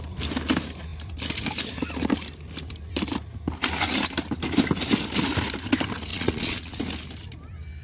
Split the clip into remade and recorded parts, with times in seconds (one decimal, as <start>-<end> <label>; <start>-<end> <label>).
0.0-6.1 recorded; 6.1-6.8 remade; 6.8-7.8 recorded